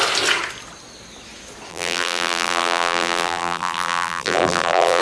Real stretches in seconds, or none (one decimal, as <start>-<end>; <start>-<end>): 0.0-1.7